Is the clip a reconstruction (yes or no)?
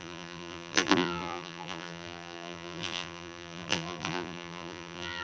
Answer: yes